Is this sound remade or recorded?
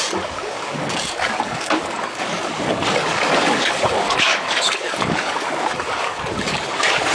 remade